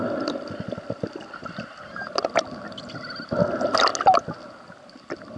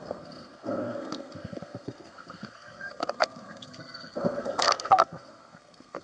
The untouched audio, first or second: first